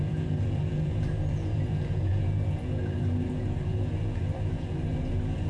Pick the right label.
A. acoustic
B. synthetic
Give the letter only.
B